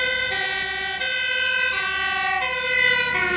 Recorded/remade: recorded